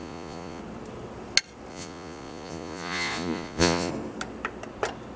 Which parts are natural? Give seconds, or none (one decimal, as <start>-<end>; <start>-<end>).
0.6-1.7; 3.9-5.2